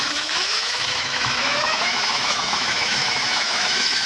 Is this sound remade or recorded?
remade